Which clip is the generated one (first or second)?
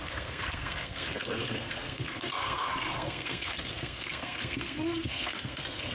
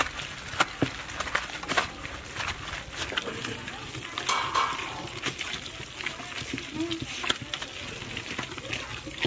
first